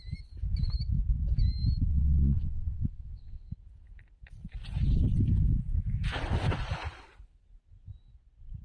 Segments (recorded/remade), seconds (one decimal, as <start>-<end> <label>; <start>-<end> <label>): 0.0-1.9 recorded; 1.9-3.5 remade; 3.5-8.6 recorded